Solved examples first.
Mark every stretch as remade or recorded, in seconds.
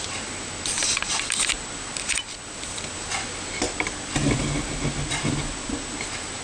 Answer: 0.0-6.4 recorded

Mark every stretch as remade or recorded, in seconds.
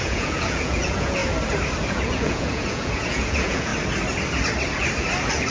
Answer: 0.0-1.2 remade; 1.2-1.9 recorded; 1.9-3.7 remade; 3.7-5.5 recorded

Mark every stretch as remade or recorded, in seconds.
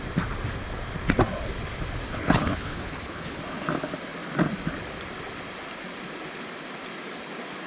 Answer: 0.0-2.1 recorded; 2.1-3.4 remade; 3.4-7.7 recorded